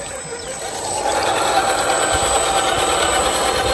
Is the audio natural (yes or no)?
yes